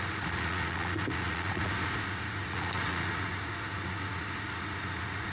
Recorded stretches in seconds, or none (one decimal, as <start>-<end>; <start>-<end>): none